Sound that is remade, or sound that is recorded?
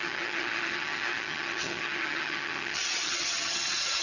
remade